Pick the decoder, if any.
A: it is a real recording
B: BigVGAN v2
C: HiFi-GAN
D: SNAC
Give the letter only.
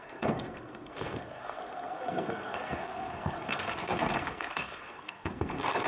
D